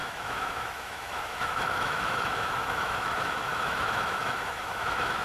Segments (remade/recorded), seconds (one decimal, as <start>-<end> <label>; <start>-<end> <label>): 0.0-5.2 remade